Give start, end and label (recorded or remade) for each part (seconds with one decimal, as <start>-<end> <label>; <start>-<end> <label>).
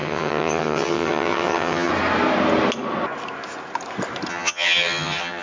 0.0-1.9 remade; 1.9-4.3 recorded; 4.3-5.4 remade